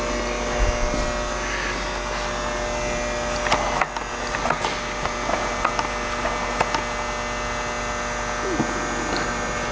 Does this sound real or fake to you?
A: real